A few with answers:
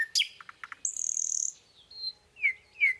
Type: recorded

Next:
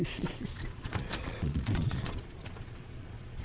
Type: remade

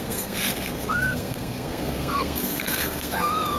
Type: remade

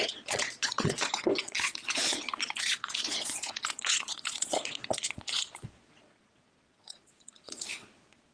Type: remade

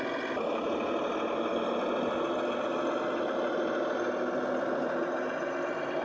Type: recorded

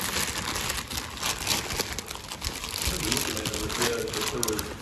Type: recorded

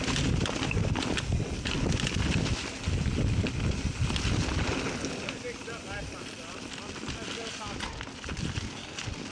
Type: recorded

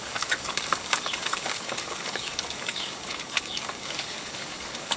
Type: remade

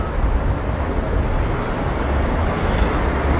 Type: recorded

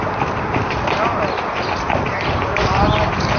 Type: recorded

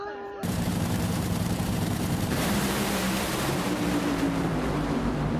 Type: remade